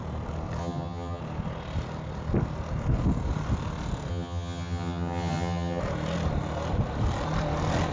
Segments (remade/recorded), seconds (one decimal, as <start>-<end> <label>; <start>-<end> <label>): 0.0-0.6 recorded; 0.6-1.2 remade; 1.2-4.1 recorded; 4.1-5.8 remade; 5.8-7.9 recorded